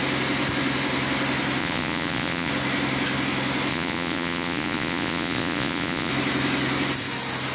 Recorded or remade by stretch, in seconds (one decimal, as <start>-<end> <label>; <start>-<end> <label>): 0.0-1.6 recorded; 1.6-2.5 remade; 2.5-3.7 recorded; 3.7-6.1 remade; 6.1-7.5 recorded